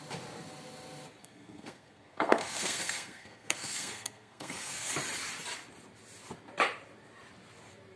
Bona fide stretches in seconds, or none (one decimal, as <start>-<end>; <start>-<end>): 0.0-1.2; 4.9-8.0